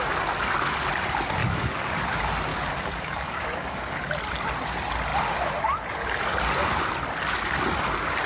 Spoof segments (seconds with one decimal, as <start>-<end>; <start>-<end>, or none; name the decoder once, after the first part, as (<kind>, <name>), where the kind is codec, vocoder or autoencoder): 1.4-2.0 (codec, DAC); 2.5-4.0